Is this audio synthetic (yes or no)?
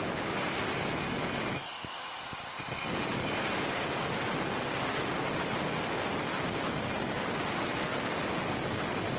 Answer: no